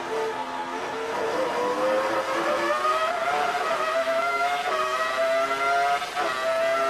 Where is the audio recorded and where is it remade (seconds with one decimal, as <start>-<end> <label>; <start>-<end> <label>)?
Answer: 0.0-4.0 recorded; 4.0-4.6 remade; 4.6-6.9 recorded